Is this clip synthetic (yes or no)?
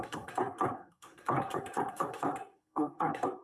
yes